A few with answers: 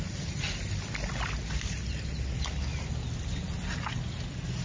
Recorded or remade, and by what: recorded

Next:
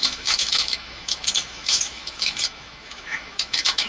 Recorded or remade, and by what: remade, autoencoder, DAC-VAE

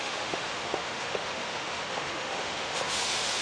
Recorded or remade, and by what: remade, autoencoder, DAC-VAE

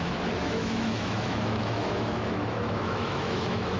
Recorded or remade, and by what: remade, autoencoder, DAC-VAE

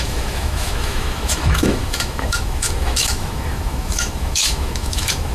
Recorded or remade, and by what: remade, autoencoder, DAC-VAE